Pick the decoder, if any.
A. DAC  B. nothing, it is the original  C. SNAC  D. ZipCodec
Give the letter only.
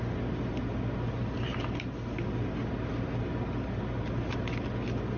B